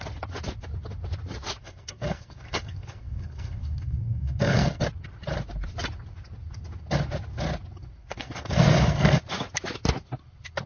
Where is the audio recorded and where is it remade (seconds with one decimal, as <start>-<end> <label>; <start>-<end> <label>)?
0.0-1.6 recorded; 1.6-4.8 remade; 4.8-8.0 recorded; 8.0-9.2 remade; 9.2-10.7 recorded